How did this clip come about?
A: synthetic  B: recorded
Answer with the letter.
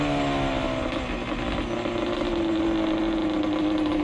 B